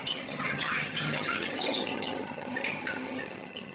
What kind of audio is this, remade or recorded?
remade